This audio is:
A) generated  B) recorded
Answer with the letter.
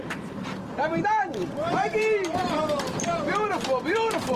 A